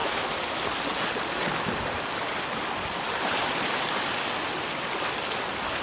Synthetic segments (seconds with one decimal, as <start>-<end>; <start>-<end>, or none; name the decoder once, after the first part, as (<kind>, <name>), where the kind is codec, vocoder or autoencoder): none